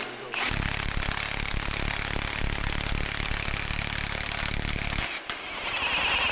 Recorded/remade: recorded